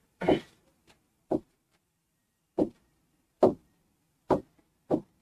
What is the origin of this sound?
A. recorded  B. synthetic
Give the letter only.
B